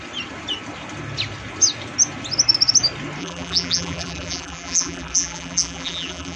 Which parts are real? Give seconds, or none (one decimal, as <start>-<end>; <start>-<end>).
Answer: 0.0-3.2